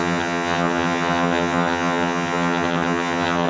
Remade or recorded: remade